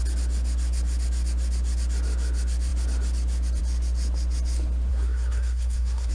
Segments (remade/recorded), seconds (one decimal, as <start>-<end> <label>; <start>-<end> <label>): 0.0-4.9 recorded; 4.9-6.1 remade